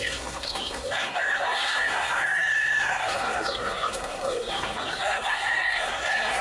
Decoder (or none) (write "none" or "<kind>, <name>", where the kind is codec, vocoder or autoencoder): codec, SNAC